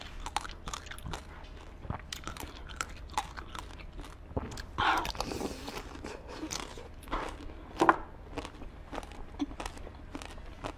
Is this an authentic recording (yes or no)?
yes